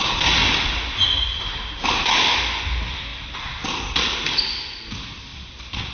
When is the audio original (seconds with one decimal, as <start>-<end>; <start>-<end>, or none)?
0.0-5.9